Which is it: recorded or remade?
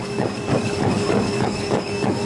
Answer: remade